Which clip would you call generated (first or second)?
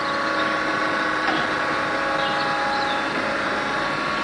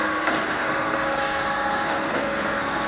second